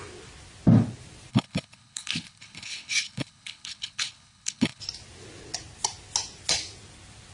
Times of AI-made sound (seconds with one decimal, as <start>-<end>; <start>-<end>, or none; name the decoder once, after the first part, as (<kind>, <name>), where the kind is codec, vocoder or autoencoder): 1.3-4.8 (codec, HILCodec)